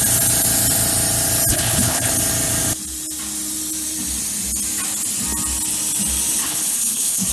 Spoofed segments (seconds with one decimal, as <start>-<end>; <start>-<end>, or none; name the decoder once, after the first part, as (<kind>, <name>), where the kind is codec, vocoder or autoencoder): 1.5-2.1 (codec, HILCodec); 6.4-7.3